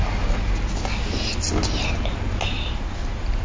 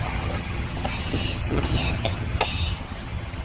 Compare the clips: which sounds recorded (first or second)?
first